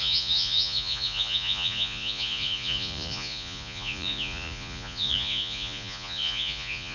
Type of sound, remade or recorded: remade